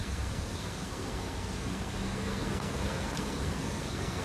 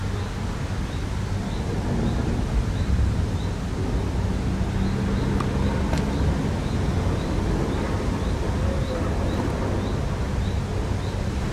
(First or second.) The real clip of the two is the second